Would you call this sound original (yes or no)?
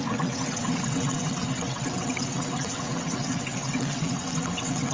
no